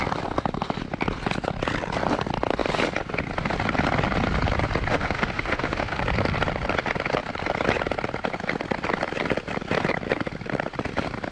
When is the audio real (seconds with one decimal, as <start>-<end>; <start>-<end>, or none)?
0.0-4.9; 6.0-11.3